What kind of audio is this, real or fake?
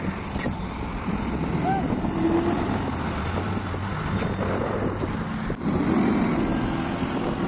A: real